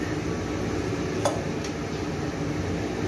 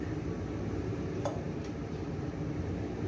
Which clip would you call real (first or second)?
first